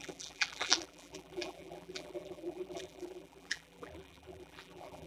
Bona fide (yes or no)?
no